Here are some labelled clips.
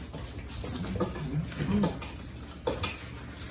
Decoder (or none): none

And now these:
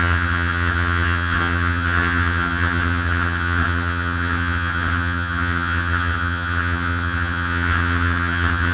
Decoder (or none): vocoder, HiFi-GAN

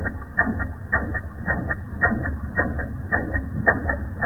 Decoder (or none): none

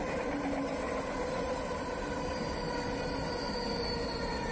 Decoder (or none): none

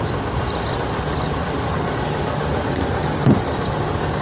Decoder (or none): none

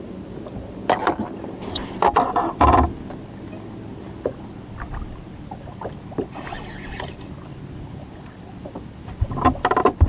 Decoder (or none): none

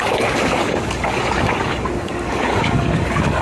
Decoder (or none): codec, DAC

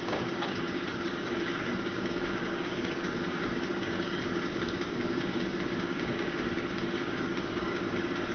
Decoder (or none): codec, DAC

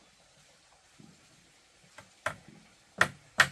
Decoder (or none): none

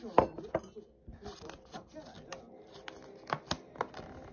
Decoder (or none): none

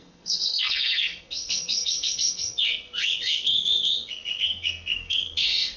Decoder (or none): codec, SNAC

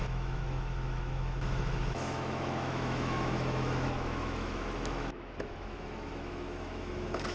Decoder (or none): autoencoder, DAC-VAE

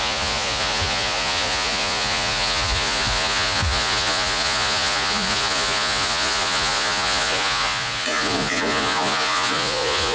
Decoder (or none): vocoder, Vocos